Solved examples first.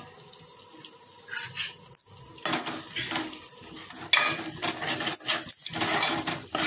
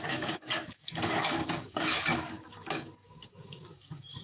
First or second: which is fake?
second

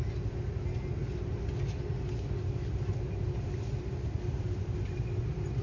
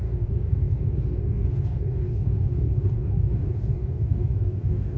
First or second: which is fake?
second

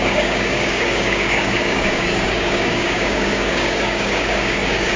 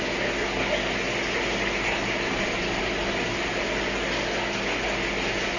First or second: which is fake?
first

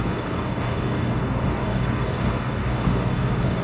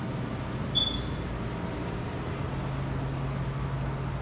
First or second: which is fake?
first